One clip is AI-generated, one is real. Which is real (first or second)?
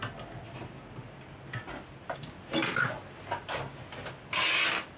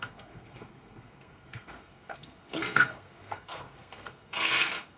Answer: first